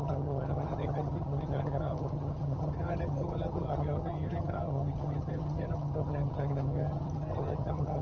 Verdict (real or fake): fake